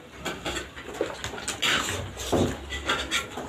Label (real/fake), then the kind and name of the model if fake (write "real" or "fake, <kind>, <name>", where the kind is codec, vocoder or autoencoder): real